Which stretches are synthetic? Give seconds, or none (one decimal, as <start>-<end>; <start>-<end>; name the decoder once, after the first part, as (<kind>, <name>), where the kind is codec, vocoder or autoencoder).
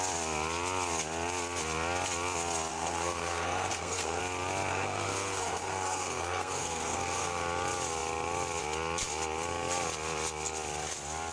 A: 2.7-4.2 (codec, SNAC); 4.7-7.4